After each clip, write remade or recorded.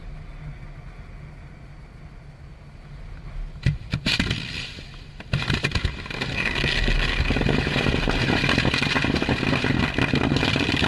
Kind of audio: recorded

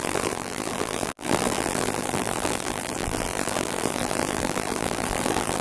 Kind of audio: remade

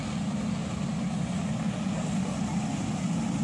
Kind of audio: recorded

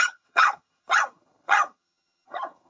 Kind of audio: remade